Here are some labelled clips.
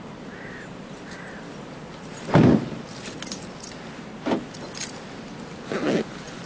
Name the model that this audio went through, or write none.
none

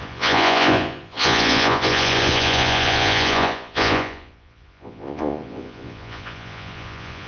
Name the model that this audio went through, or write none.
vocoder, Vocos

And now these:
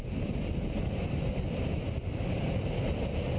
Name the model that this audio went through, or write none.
none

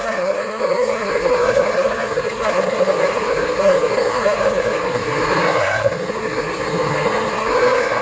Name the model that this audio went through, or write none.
codec, SNAC